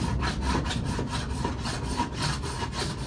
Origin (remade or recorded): recorded